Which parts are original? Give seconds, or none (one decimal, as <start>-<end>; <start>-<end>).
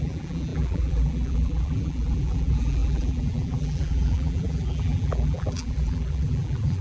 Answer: none